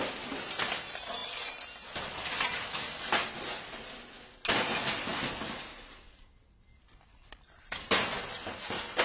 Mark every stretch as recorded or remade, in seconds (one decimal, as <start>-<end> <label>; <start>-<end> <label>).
0.0-9.0 recorded